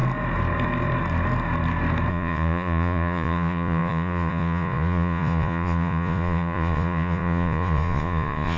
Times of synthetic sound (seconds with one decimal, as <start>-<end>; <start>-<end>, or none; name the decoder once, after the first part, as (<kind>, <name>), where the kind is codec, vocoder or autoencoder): 2.1-8.6 (vocoder, Vocos)